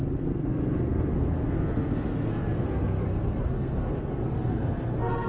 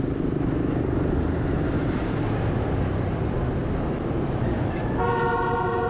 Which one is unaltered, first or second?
second